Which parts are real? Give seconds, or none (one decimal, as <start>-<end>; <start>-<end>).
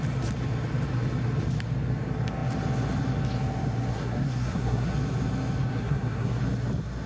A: 0.0-3.9; 4.9-5.7; 6.4-7.1